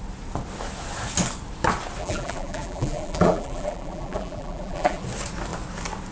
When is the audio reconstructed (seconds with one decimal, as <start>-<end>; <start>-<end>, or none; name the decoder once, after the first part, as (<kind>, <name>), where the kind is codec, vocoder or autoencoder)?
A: 2.0-5.0 (vocoder, BigVGAN v2)

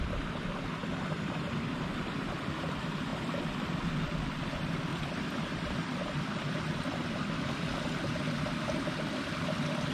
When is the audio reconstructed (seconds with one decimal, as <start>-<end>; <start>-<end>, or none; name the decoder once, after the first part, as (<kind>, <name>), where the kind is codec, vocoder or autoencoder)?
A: 0.8-1.5 (vocoder, BigVGAN v2); 4.9-8.0

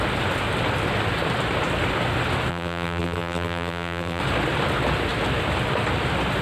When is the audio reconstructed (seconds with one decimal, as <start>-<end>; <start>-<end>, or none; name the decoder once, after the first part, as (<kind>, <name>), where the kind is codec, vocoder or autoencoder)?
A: 2.5-4.2 (vocoder, BigVGAN v2)

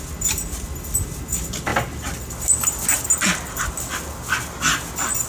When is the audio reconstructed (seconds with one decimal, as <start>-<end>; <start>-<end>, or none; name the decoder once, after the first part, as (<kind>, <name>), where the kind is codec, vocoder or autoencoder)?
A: none

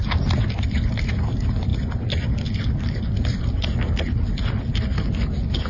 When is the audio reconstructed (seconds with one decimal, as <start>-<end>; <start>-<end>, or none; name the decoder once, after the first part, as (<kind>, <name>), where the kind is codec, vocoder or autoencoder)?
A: none

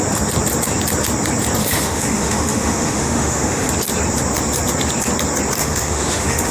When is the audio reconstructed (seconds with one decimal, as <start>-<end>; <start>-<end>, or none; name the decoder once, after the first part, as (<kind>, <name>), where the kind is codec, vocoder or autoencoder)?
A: 1.6-3.7 (autoencoder, DAC-VAE); 5.6-6.5